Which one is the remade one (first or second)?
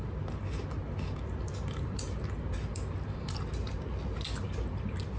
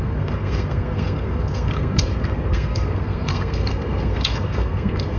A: second